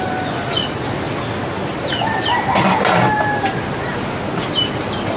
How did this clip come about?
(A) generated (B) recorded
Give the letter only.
B